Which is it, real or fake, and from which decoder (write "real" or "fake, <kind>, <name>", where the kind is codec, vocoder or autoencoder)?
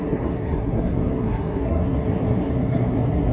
fake, codec, SNAC